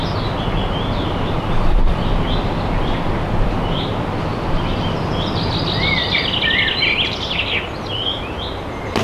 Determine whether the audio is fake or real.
real